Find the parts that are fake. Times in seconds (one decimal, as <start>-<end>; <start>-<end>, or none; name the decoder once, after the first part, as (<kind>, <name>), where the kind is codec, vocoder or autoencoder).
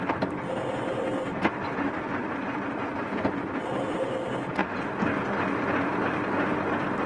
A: none